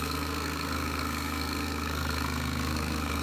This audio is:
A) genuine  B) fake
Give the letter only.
B